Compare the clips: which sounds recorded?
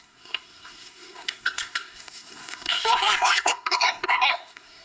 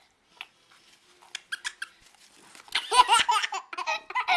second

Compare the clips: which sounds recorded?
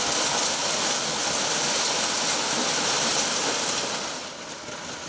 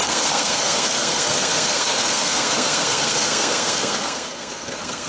first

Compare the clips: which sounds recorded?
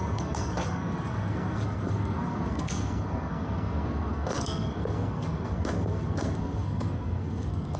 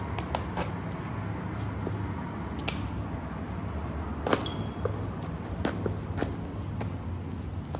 second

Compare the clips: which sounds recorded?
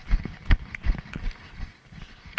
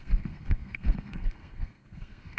first